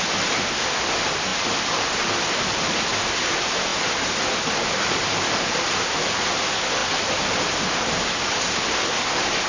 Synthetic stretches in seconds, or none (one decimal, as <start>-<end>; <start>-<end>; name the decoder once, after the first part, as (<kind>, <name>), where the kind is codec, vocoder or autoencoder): none